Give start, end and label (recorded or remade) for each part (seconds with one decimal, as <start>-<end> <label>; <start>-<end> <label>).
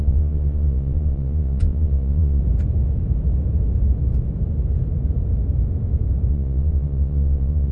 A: 0.0-2.4 remade; 2.4-6.3 recorded; 6.3-7.7 remade